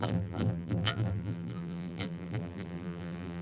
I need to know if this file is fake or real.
fake